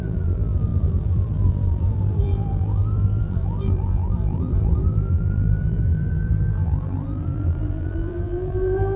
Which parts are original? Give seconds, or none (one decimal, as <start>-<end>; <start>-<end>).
none